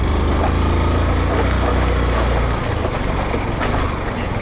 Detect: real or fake real